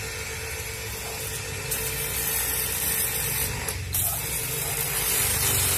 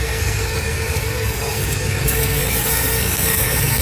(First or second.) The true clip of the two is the first